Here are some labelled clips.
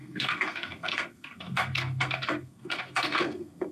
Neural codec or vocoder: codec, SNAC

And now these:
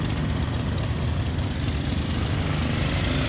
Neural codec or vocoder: none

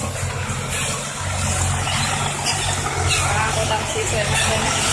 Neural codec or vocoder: none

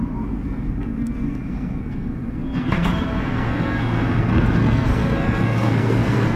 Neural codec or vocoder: codec, SNAC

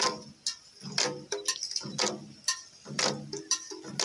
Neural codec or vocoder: none